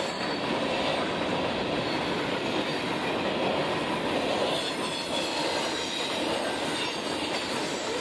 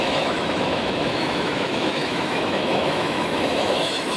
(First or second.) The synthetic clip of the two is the second